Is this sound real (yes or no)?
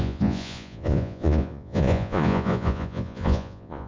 no